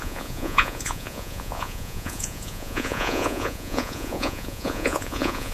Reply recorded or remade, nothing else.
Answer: remade